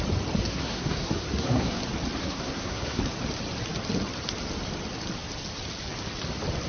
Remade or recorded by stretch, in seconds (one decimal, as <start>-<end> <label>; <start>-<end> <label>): 0.0-0.4 recorded; 0.4-1.8 remade; 1.8-2.2 recorded; 2.2-3.0 remade; 3.0-6.7 recorded